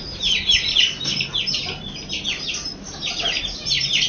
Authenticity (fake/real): real